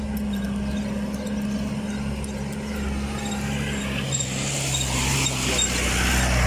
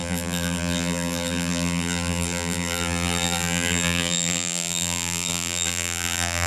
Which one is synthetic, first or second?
second